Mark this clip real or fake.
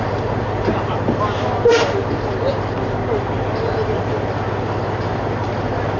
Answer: real